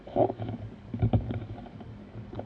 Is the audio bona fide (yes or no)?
no